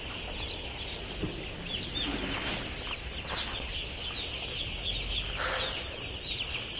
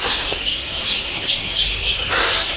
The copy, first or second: second